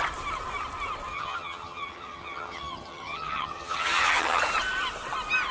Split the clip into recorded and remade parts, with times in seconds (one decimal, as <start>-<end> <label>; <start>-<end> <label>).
0.0-1.1 recorded; 1.1-4.4 remade; 4.4-5.5 recorded